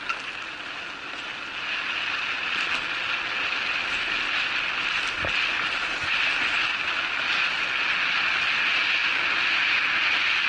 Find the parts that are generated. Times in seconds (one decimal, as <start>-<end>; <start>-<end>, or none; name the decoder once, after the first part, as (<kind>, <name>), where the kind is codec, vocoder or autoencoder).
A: none